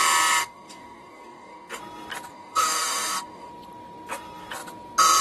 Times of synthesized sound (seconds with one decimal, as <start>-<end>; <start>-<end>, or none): 0.4-1.8; 2.3-3.5